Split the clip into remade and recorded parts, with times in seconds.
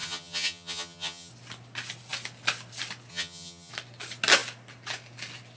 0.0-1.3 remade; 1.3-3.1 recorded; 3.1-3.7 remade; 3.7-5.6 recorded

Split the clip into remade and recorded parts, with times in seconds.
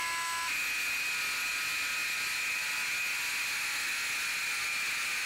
0.0-5.3 recorded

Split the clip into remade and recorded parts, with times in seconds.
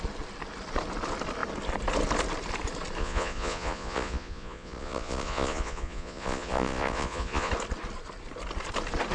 0.0-3.0 recorded; 3.0-7.5 remade; 7.5-9.1 recorded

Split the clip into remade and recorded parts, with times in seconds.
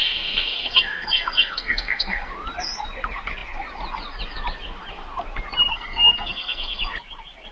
0.0-2.3 remade; 2.3-5.7 recorded; 5.7-6.8 remade; 6.8-7.5 recorded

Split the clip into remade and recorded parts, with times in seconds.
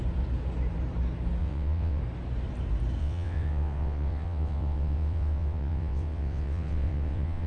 0.0-1.4 recorded; 1.4-2.0 remade; 2.0-3.0 recorded; 3.0-7.5 remade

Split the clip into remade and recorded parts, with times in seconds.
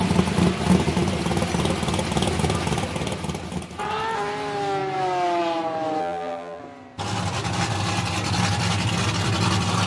0.0-6.0 recorded; 6.0-6.6 remade; 6.6-9.9 recorded